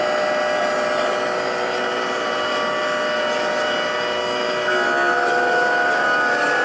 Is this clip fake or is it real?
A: real